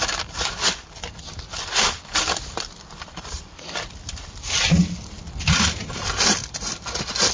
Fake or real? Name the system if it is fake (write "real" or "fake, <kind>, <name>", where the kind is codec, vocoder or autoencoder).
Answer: real